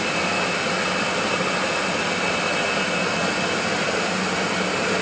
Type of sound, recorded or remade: recorded